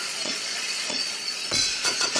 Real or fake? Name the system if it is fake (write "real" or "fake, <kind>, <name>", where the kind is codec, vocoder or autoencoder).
fake, vocoder, Vocos